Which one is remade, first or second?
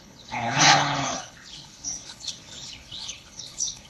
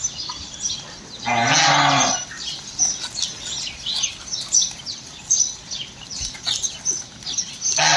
first